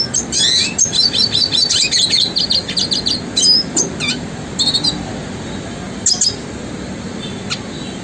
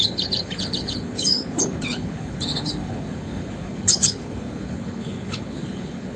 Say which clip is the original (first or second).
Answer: first